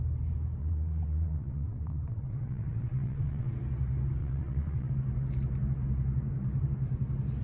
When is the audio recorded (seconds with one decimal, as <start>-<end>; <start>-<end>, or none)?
0.0-0.6; 3.5-4.2; 4.9-7.4